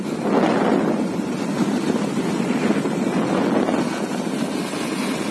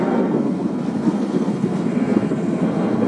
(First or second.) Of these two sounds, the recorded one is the first